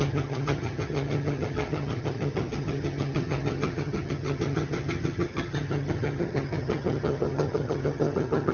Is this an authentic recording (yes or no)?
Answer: no